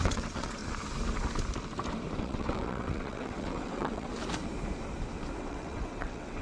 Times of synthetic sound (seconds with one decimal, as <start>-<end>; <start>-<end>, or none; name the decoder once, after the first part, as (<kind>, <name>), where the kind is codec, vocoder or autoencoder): 0.0-0.6 (vocoder, WaveNeXt); 2.2-4.1; 5.4-6.4